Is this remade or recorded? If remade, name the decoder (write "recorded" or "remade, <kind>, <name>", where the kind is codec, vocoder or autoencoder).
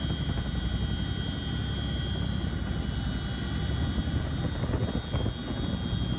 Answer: recorded